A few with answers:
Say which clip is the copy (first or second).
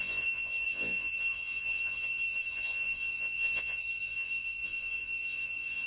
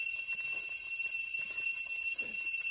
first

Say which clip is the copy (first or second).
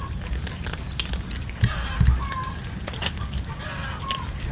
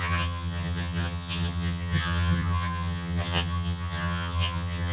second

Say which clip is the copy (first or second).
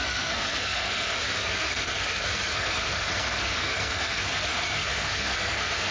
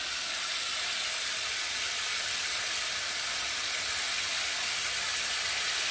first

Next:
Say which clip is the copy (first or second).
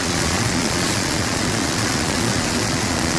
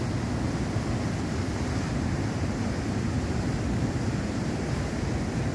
first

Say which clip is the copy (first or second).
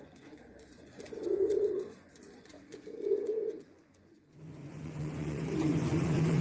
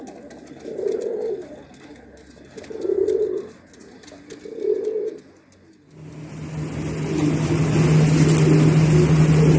first